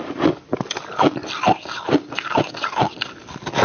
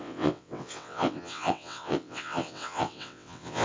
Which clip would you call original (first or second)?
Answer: first